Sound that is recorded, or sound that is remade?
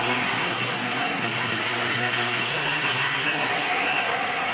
remade